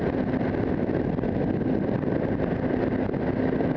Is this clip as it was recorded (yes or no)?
yes